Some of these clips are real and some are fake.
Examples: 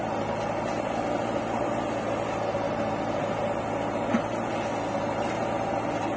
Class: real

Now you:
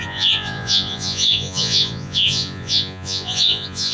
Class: fake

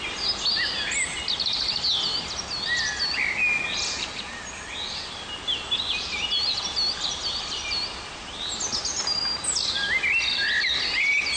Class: real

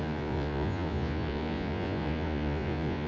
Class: fake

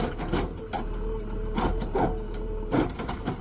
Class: fake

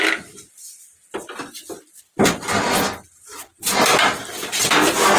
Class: real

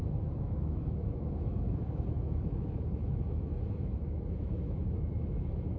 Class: fake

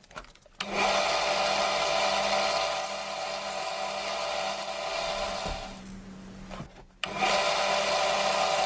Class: real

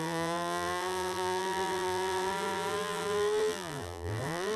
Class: fake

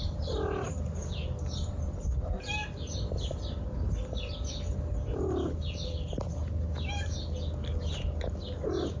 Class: real